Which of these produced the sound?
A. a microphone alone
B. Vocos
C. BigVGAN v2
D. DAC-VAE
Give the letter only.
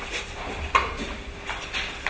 A